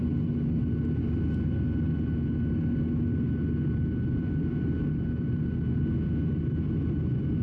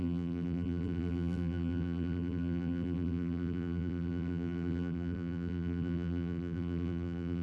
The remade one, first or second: second